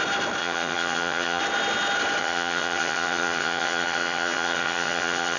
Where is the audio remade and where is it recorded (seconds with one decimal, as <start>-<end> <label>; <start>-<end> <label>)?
0.0-0.4 recorded; 0.4-1.4 remade; 1.4-2.2 recorded; 2.2-5.4 remade